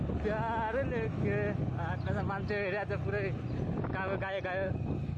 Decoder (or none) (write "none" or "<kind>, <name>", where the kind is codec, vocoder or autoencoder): none